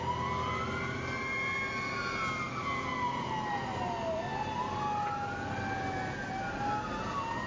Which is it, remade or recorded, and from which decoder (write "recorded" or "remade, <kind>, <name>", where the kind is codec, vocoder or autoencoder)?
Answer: recorded